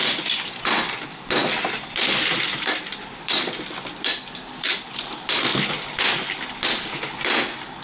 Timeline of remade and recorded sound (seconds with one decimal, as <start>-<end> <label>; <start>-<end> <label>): 0.0-0.6 remade; 0.6-1.4 recorded; 1.4-5.0 remade; 5.0-7.8 recorded